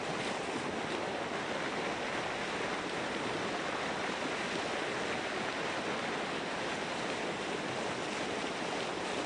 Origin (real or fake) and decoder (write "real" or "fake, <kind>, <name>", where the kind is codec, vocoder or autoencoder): real